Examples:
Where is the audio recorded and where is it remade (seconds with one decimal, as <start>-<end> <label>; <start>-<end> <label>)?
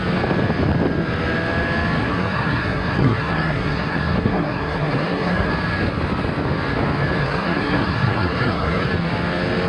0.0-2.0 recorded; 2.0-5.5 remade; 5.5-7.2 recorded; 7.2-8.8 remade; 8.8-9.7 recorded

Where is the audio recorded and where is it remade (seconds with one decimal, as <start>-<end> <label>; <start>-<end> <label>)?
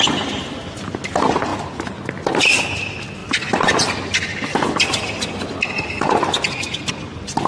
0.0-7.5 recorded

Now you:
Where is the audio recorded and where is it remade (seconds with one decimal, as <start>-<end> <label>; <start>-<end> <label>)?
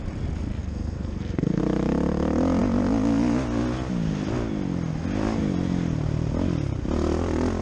0.0-0.6 recorded; 0.6-1.6 remade; 1.6-7.6 recorded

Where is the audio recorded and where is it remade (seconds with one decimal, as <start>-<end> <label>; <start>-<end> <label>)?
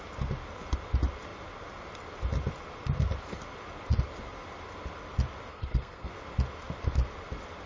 0.0-5.5 recorded; 5.5-6.1 remade; 6.1-7.7 recorded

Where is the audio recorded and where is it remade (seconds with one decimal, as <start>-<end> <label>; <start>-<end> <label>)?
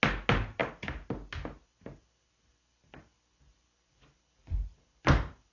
0.0-5.5 recorded